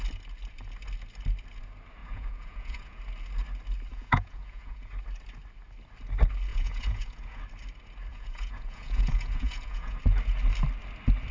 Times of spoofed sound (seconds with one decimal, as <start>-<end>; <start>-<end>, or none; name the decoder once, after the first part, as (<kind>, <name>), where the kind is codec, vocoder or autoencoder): 2.0-3.0 (vocoder, Vocos); 3.9-4.9; 6.5-7.4; 8.1-10.0